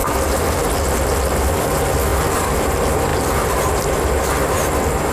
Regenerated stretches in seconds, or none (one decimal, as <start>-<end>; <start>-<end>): 3.1-3.8

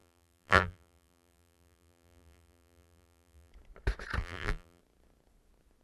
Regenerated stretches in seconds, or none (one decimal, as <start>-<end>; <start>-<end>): 0.0-3.5; 4.2-4.8

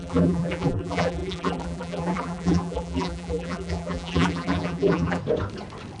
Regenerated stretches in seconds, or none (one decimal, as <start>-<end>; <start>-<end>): 0.0-5.2